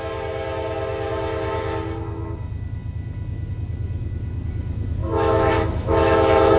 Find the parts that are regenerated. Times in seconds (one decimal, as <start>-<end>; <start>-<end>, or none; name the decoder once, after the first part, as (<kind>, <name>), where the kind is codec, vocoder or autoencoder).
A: 5.0-6.6 (autoencoder, DAC-VAE)